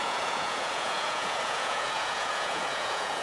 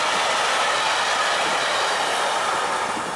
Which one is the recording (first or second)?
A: second